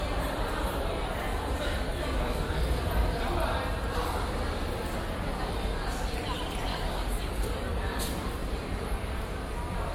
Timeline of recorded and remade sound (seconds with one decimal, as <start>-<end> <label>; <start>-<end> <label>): 0.0-1.9 recorded; 1.9-2.6 remade; 2.6-6.7 recorded; 6.7-8.0 remade; 8.0-9.9 recorded